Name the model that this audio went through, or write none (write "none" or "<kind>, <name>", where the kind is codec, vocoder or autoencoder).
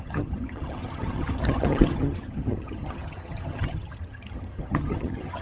vocoder, HiFi-GAN